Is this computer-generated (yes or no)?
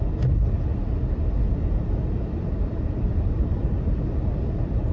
yes